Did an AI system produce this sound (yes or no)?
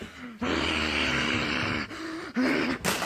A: no